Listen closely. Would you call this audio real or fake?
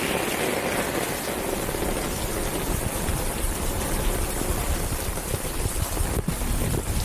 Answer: real